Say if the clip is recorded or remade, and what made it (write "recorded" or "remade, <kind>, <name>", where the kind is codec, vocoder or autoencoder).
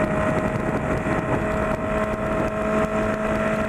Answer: recorded